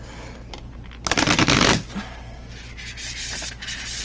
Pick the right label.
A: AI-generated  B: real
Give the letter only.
B